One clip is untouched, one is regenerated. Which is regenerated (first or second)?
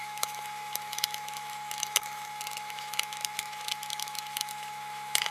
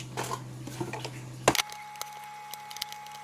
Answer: first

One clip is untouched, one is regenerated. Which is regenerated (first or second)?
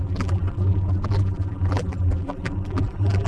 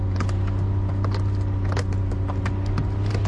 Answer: first